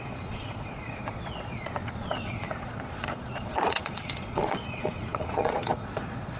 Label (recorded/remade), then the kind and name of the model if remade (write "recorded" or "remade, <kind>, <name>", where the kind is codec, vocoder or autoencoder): remade, vocoder, Vocos